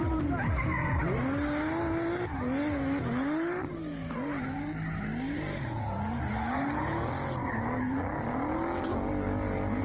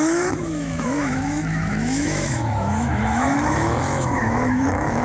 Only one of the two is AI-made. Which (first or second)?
second